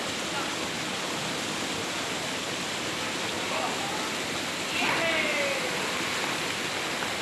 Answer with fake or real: real